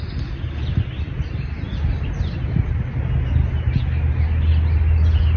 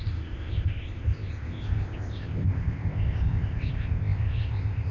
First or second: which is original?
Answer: first